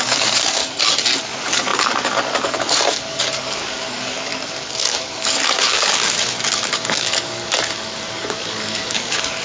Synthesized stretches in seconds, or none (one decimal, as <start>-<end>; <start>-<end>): 0.0-0.6; 1.2-9.4